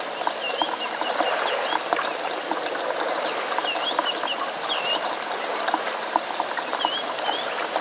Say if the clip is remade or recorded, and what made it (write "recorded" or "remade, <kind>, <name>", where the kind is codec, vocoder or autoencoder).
recorded